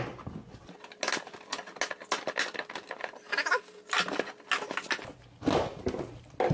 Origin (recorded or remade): recorded